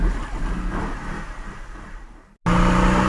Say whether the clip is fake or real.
real